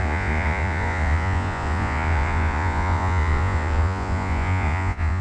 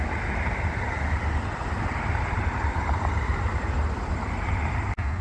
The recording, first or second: second